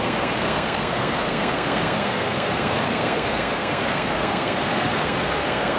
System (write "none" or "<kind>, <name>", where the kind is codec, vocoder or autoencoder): codec, SNAC